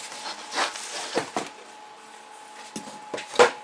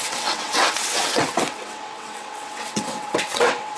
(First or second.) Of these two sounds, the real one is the first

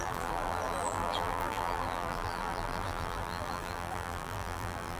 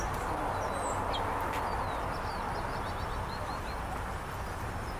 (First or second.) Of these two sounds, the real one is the second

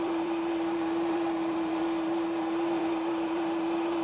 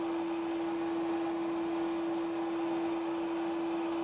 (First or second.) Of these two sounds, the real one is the second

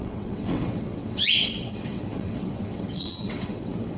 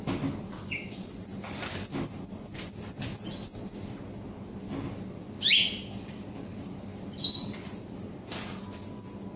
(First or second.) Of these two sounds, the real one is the second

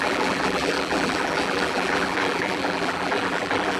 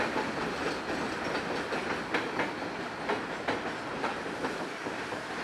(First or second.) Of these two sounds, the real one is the second